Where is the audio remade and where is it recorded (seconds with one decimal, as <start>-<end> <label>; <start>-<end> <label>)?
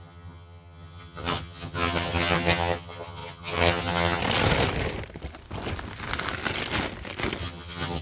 0.0-4.2 remade; 4.2-7.4 recorded; 7.4-8.0 remade